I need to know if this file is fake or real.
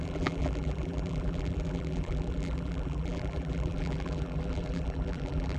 fake